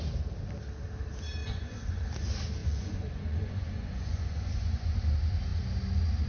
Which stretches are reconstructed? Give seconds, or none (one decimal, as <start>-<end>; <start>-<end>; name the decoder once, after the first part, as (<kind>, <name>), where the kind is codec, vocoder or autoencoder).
1.4-2.0 (vocoder, Vocos); 2.6-4.9